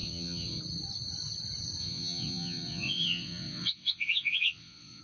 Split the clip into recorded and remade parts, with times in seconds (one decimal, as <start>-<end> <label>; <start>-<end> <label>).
0.0-0.6 remade; 0.6-1.8 recorded; 1.8-5.0 remade